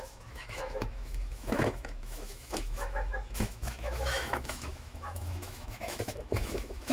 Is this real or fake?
fake